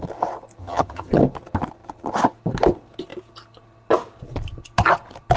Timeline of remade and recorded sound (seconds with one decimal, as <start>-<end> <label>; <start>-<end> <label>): 0.0-0.6 recorded; 0.6-1.2 remade; 1.2-5.4 recorded